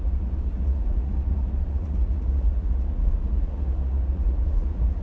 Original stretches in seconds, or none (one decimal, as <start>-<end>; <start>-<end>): none